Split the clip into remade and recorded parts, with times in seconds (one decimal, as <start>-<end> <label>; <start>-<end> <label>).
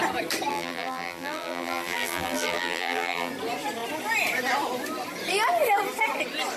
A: 0.0-0.5 recorded; 0.5-3.3 remade; 3.3-6.6 recorded